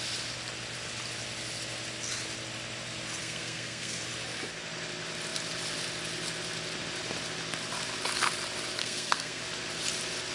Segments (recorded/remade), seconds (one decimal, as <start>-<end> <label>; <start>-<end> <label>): 0.0-3.2 recorded; 3.2-4.0 remade; 4.0-8.8 recorded; 8.8-9.4 remade; 9.4-10.3 recorded